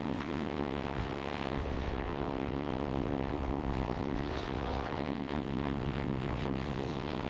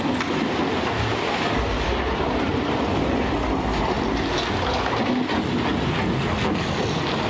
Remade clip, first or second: first